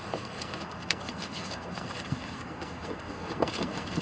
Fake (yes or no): yes